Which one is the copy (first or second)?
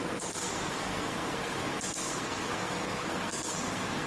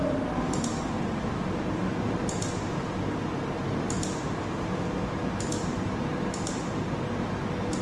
first